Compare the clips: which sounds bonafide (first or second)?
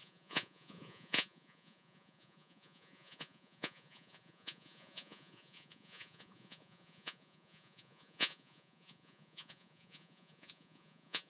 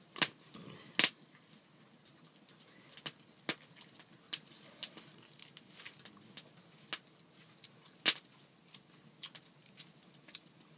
second